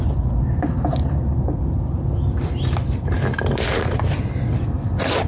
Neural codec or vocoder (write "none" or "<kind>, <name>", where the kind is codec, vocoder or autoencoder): none